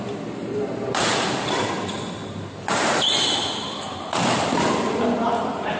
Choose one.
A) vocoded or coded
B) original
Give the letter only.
B